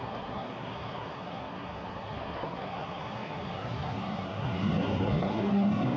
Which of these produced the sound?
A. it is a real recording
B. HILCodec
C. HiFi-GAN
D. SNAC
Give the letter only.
D